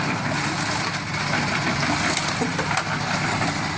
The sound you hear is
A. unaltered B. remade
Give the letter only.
A